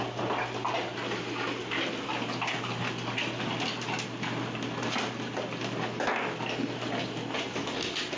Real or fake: real